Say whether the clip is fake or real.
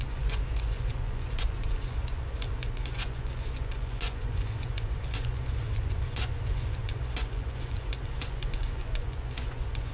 fake